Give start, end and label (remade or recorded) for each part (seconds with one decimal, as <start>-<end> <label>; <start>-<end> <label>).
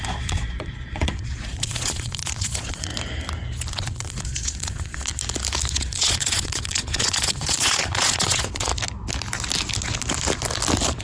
0.0-2.9 remade; 2.9-3.7 recorded; 3.7-5.1 remade; 5.1-5.7 recorded; 5.7-8.7 remade; 8.7-11.0 recorded